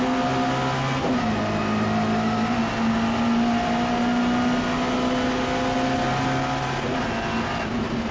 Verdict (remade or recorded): recorded